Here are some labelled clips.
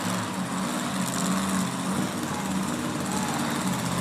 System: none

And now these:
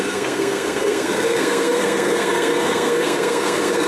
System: codec, SNAC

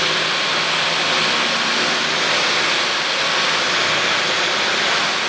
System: none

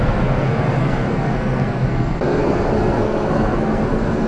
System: codec, SNAC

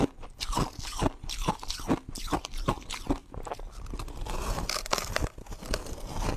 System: none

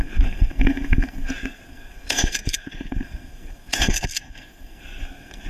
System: codec, SNAC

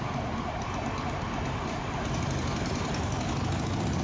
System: none